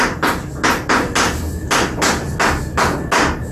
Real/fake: real